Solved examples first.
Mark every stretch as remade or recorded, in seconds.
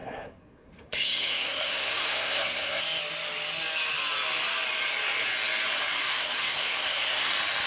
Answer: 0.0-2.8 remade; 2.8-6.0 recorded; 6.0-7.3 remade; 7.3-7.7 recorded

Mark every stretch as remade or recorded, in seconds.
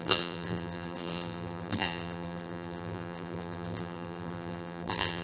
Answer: 0.0-5.2 remade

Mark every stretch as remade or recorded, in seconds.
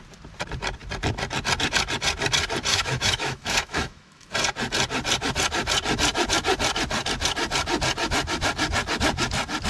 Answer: 0.0-2.7 recorded; 2.7-4.3 remade; 4.3-9.7 recorded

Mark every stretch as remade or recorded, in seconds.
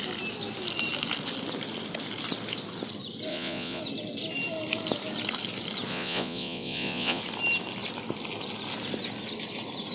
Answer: 0.0-3.3 recorded; 3.3-3.8 remade; 3.8-5.9 recorded; 5.9-7.2 remade; 7.2-9.9 recorded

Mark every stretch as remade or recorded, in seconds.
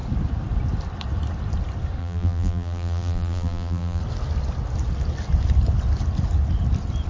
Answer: 0.0-2.0 recorded; 2.0-4.0 remade; 4.0-7.1 recorded